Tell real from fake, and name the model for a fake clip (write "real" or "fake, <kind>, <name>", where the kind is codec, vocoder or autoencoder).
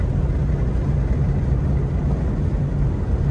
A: real